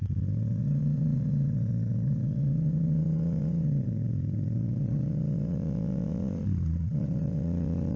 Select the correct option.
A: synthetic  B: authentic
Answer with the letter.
A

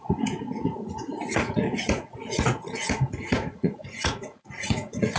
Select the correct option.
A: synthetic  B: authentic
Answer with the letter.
A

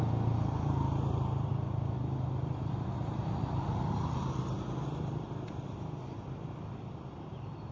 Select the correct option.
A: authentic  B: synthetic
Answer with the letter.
A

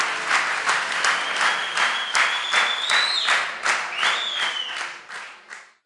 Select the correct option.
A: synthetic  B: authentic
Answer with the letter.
B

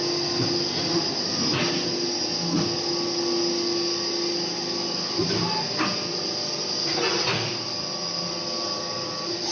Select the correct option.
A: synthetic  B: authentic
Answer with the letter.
B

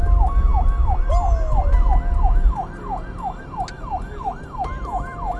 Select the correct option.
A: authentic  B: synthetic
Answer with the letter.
A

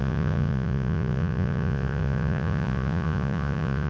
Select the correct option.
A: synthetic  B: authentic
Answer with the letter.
A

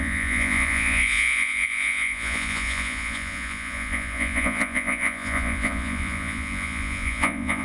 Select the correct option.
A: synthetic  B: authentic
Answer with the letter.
A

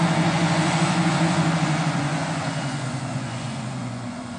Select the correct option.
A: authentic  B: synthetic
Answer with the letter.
B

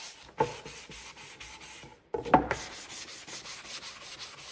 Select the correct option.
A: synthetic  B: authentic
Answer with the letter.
B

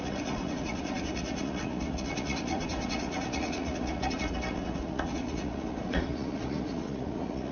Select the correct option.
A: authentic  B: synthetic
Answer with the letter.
B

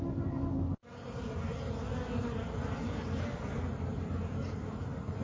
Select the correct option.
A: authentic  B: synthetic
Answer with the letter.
A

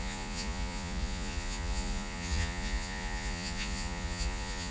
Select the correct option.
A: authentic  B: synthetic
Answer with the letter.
B